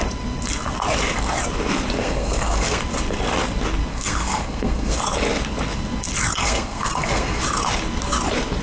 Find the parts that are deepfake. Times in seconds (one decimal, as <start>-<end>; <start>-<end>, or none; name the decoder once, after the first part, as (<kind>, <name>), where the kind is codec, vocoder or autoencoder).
2.0-2.8 (codec, SNAC); 3.9-5.0; 6.3-7.4